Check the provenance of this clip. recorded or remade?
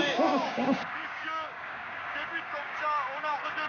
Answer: remade